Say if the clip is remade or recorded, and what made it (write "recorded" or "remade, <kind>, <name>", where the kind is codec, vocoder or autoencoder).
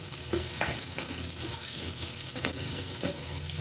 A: remade, codec, SNAC